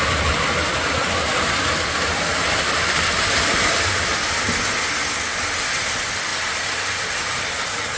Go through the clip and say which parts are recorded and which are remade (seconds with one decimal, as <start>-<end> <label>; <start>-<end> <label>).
0.0-8.0 recorded